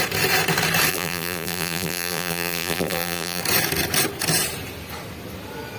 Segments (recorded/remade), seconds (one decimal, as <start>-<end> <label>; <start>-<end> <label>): 0.0-0.9 recorded; 0.9-3.4 remade; 3.4-5.8 recorded

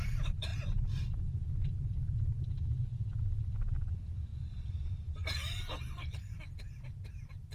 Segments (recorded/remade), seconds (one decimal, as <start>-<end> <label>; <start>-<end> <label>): 0.0-0.5 remade; 0.5-3.5 recorded; 3.5-7.5 remade

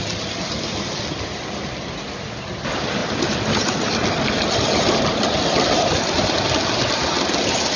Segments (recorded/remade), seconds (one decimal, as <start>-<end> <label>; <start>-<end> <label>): 0.0-7.8 recorded

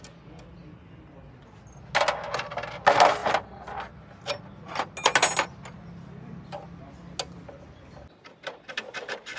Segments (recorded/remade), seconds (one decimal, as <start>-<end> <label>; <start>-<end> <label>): 0.0-9.4 recorded

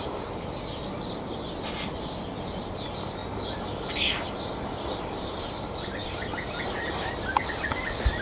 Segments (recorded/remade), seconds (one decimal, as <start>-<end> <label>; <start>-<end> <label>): 0.0-8.2 remade

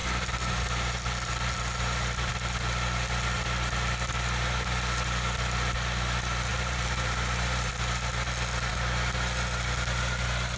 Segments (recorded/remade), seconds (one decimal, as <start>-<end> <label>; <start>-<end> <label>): 0.0-6.5 recorded; 6.5-7.7 remade; 7.7-10.6 recorded

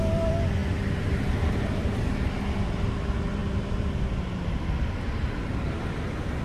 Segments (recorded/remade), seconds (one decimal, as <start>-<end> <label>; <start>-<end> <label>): 0.0-3.4 recorded; 3.4-4.6 remade; 4.6-6.4 recorded

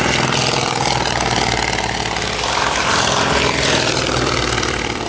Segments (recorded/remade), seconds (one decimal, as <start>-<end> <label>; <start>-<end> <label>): 0.0-2.9 recorded; 2.9-5.1 remade